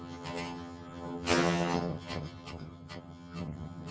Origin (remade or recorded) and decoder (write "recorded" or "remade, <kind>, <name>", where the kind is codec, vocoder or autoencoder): remade, vocoder, HiFi-GAN